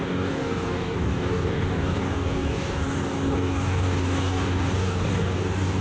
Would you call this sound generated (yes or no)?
yes